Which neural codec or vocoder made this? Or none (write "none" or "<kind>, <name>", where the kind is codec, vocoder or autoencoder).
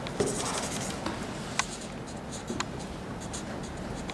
none